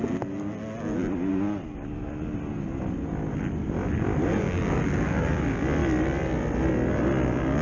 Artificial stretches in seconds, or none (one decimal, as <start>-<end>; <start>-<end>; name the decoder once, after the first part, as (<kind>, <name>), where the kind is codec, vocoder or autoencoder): none